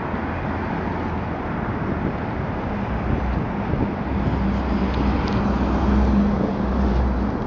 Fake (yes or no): no